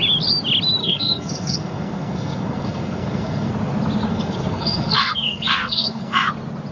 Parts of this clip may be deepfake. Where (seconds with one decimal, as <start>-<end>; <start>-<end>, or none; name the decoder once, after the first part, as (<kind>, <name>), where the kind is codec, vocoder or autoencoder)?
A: 0.8-3.5 (codec, SNAC); 4.1-6.3